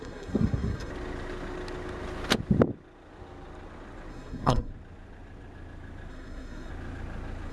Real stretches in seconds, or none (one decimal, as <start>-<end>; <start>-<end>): 0.9-4.1; 4.7-6.1; 6.7-7.5